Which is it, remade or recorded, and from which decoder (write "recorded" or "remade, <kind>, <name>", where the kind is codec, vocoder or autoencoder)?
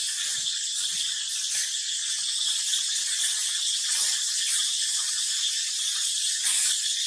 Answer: recorded